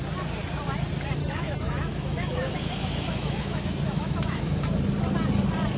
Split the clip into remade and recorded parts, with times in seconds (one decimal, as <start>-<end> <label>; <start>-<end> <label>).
0.0-1.2 recorded; 1.2-4.7 remade; 4.7-5.8 recorded